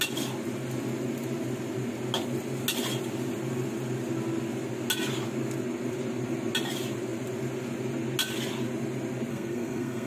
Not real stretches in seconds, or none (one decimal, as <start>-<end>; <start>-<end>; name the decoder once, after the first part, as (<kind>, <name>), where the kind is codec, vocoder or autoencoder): 9.3-10.1 (codec, SNAC)